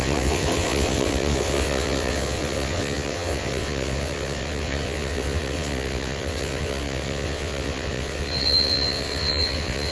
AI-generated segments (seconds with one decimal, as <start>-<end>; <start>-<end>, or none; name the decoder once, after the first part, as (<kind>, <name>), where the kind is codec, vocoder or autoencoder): 0.0-9.9 (vocoder, WaveNeXt)